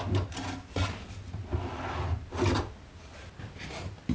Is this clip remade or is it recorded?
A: recorded